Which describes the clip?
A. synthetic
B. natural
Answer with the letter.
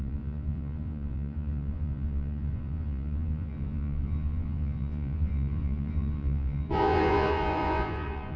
A